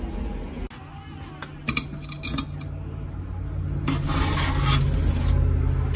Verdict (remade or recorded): recorded